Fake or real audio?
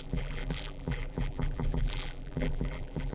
fake